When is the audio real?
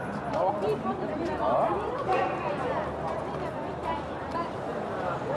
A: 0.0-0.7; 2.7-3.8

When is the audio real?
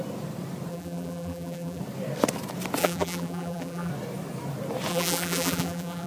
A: 0.0-0.7; 1.8-2.8; 3.9-4.9